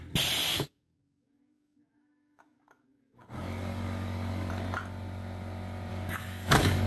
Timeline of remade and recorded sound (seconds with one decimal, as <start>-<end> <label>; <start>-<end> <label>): 0.0-0.5 recorded; 0.5-4.5 remade; 4.5-5.9 recorded; 5.9-6.9 remade